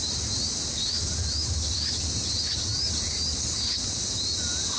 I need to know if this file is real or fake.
real